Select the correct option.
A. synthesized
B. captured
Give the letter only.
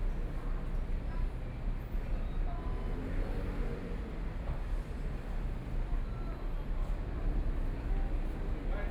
B